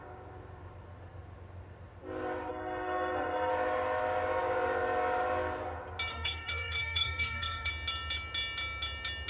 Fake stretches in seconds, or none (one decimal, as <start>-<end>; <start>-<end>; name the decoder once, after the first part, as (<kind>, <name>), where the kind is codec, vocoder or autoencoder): 2.5-3.5 (codec, SNAC); 6.1-7.7